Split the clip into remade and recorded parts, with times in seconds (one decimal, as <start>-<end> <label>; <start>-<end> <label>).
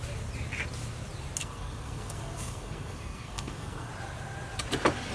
0.0-1.4 recorded; 1.4-3.9 remade; 3.9-5.1 recorded